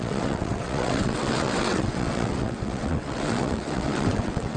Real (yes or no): no